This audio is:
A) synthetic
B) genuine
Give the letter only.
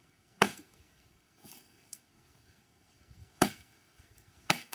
A